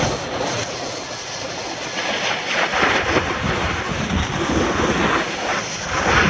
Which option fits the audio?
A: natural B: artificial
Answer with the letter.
A